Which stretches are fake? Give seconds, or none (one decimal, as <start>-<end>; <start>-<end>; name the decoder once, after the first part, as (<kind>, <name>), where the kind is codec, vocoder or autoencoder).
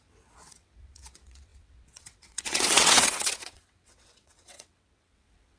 0.0-5.6 (vocoder, WaveNeXt)